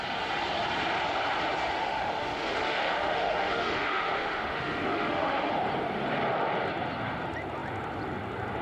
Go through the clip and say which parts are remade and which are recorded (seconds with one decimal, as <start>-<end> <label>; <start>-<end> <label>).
0.0-1.8 recorded; 1.8-5.5 remade; 5.5-8.6 recorded